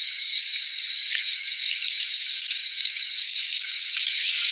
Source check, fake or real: fake